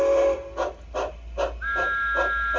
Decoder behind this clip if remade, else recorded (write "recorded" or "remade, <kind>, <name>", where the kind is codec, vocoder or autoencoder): recorded